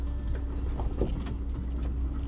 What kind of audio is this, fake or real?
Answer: real